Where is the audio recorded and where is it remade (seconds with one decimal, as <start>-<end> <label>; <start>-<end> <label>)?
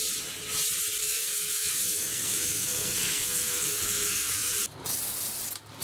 0.0-1.0 recorded; 1.0-4.5 remade; 4.5-5.8 recorded